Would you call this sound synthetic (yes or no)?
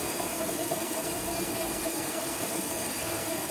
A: yes